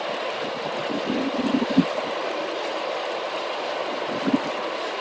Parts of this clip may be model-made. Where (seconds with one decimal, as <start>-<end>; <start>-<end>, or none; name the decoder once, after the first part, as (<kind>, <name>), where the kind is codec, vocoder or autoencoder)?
0.8-2.4 (vocoder, BigVGAN v2)